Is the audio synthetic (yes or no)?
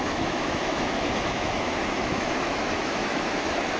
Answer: yes